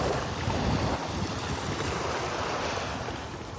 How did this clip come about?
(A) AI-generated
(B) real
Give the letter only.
B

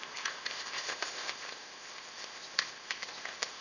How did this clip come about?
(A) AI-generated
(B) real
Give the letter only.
A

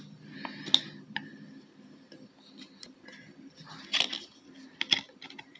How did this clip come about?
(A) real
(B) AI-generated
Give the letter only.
A